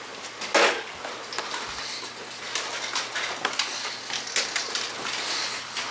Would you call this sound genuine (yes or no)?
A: yes